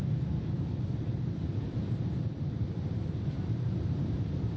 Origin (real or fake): fake